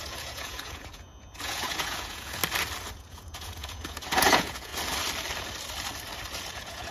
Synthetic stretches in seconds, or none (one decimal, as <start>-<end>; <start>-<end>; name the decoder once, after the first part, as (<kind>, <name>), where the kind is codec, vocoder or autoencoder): 0.0-2.4 (vocoder, Vocos); 2.9-4.7; 6.5-6.9